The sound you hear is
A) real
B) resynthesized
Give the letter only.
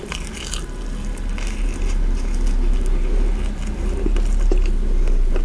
A